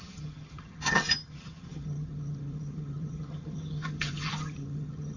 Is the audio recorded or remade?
remade